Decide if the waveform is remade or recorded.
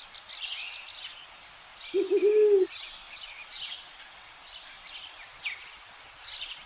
recorded